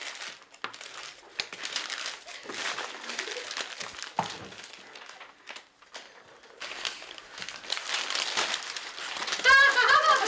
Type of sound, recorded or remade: recorded